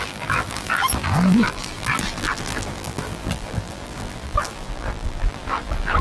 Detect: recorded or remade remade